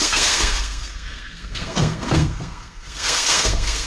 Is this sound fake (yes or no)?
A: yes